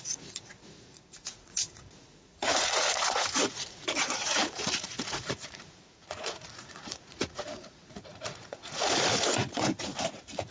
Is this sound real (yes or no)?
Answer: no